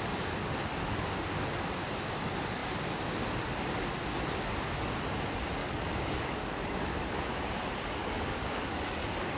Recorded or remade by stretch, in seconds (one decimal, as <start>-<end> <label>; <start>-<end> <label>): 0.0-0.4 recorded; 0.4-1.3 remade; 1.3-5.6 recorded; 5.6-7.2 remade; 7.2-8.0 recorded; 8.0-9.4 remade